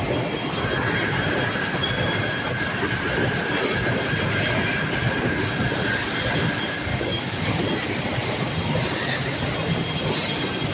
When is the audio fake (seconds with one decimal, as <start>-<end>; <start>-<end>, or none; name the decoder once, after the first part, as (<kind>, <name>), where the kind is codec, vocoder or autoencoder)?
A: 6.9-7.6 (codec, DAC)